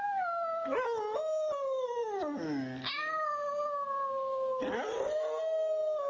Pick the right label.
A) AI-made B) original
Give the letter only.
B